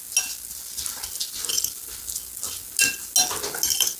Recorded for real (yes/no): yes